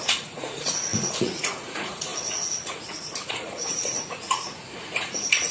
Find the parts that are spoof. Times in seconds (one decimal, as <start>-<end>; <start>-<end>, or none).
0.0-5.5